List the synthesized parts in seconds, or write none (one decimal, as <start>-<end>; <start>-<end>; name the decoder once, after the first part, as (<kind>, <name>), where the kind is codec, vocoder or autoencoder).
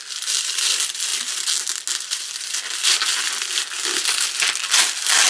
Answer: none